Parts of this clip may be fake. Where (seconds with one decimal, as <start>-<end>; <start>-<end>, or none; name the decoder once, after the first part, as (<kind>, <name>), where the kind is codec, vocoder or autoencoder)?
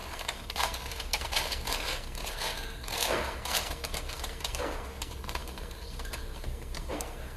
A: 0.0-7.4 (codec, SNAC)